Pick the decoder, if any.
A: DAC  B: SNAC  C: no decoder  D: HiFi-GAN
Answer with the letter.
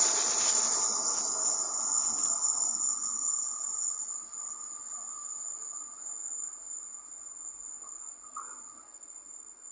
C